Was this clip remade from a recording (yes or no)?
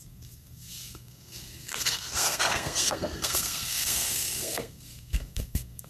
yes